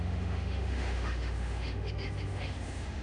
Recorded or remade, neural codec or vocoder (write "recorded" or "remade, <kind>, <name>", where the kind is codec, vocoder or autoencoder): remade, autoencoder, DAC-VAE